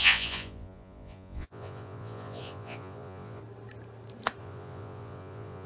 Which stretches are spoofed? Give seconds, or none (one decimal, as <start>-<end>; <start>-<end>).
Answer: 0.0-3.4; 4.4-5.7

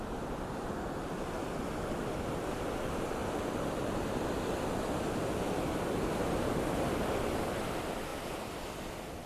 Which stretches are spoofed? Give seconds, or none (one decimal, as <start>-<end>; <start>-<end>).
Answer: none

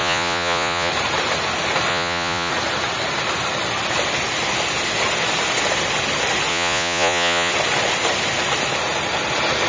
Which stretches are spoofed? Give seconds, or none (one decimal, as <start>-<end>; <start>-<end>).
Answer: 0.0-0.9; 1.9-2.5; 6.5-7.5